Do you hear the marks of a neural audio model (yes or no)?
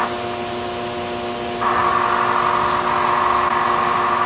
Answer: no